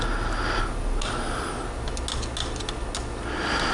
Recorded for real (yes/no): yes